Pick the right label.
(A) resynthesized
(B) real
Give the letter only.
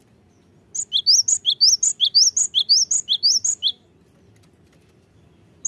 B